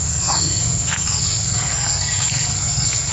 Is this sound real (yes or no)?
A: no